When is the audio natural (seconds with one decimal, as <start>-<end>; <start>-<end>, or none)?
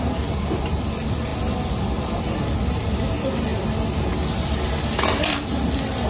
0.0-6.1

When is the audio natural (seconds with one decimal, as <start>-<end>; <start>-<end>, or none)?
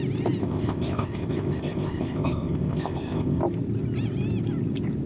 0.0-0.4; 3.4-5.1